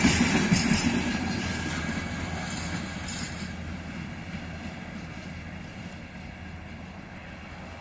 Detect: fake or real real